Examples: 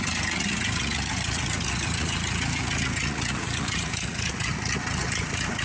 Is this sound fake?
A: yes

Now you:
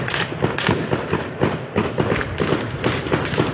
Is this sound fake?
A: no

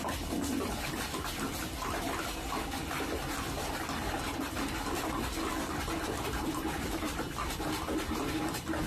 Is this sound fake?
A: no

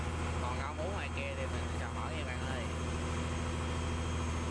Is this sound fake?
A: no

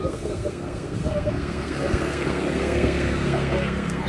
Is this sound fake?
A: yes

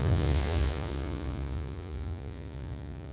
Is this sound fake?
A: yes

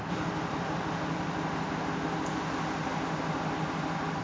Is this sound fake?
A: no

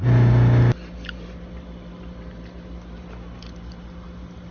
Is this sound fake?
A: no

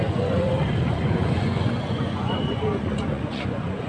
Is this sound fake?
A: yes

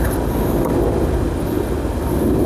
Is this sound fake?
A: no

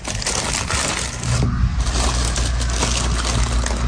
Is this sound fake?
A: no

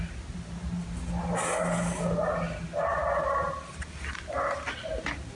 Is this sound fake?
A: no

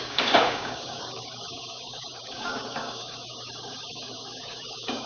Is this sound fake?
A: yes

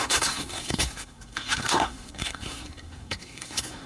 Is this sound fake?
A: yes